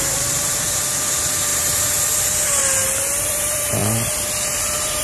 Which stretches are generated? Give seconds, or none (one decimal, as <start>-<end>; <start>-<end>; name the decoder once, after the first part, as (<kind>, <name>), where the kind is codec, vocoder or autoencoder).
0.0-2.6 (vocoder, BigVGAN v2); 3.2-5.0